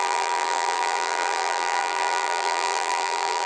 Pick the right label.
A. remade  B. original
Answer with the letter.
A